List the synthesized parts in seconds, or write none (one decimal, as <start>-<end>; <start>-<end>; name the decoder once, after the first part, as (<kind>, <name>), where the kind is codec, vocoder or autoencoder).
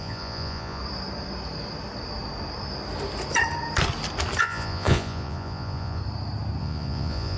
0.0-0.8 (vocoder, Vocos); 4.4-6.0; 6.6-7.4